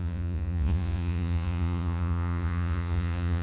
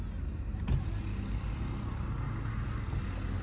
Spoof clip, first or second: first